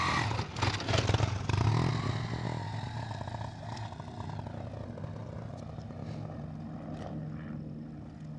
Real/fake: real